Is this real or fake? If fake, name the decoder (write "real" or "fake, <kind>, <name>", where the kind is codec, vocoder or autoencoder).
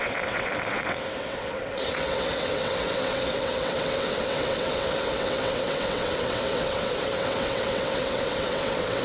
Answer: fake, vocoder, WaveNeXt